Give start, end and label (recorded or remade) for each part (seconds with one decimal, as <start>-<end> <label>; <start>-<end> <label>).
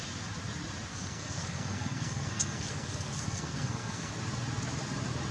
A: 0.0-0.9 recorded; 0.9-4.1 remade; 4.1-5.3 recorded